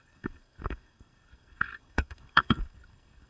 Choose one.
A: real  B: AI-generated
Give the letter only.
B